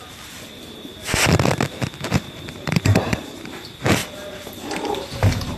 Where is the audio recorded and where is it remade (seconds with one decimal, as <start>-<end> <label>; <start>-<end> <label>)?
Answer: 0.0-0.9 remade; 0.9-2.1 recorded; 2.1-5.6 remade